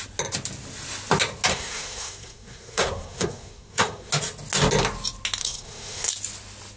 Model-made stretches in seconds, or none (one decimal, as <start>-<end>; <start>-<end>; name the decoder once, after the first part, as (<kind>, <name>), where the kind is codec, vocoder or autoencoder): 1.5-4.1 (codec, SNAC); 5.4-6.1